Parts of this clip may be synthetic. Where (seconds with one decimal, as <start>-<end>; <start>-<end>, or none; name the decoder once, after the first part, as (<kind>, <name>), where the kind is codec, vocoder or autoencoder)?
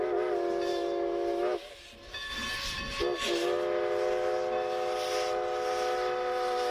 0.7-1.7 (autoencoder, DAC-VAE)